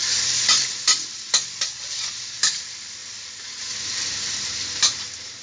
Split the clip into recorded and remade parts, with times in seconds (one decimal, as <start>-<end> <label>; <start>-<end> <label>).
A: 0.0-3.0 remade; 3.0-3.9 recorded; 3.9-5.4 remade